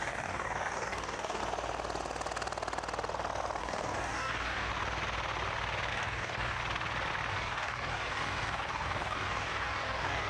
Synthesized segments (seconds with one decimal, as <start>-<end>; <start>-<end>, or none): 0.0-1.4; 3.6-4.7; 5.9-6.6; 7.3-10.3